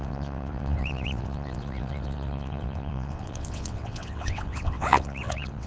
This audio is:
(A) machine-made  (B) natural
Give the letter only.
A